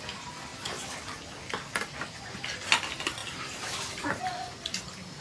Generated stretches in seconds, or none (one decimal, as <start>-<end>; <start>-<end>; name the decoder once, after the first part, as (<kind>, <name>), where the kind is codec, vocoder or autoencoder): none